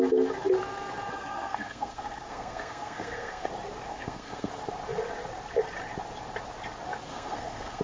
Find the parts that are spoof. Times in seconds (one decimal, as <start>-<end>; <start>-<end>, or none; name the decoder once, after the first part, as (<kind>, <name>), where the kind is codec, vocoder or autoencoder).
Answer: 1.1-3.5 (codec, SNAC); 3.9-4.5; 7.1-7.8